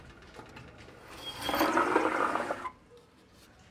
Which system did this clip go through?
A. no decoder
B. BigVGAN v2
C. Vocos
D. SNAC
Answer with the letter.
A